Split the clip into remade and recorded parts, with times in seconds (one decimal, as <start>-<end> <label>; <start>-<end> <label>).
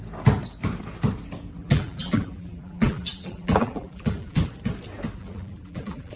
0.0-1.6 recorded; 1.6-4.5 remade; 4.5-5.2 recorded; 5.2-6.2 remade